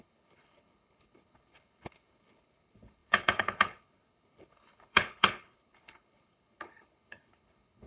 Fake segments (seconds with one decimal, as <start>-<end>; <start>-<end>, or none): 0.0-7.9